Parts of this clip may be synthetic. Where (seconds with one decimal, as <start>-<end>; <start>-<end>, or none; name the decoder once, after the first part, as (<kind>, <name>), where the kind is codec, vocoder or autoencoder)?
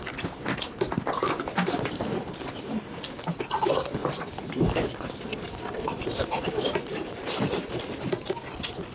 1.2-3.3 (vocoder, BigVGAN v2); 4.0-6.5; 6.9-7.9